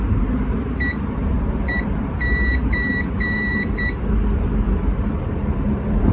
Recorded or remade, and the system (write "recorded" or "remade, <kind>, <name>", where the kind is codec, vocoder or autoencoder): remade, vocoder, BigVGAN v2